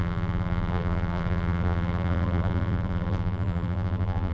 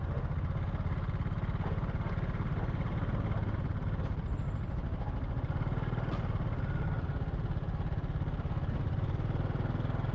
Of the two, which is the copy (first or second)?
first